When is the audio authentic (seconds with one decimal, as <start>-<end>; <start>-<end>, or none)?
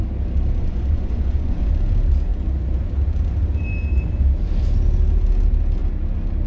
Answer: 0.0-0.6; 1.7-6.5